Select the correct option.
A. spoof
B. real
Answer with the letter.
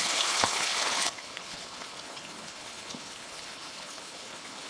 A